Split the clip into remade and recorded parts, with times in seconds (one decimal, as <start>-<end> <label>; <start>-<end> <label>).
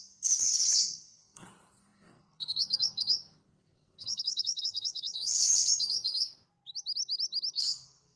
0.0-6.6 remade; 6.6-7.5 recorded; 7.5-8.2 remade